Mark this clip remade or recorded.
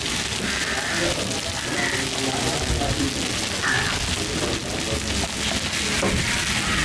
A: recorded